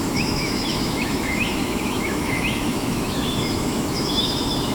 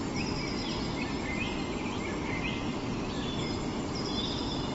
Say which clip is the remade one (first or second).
first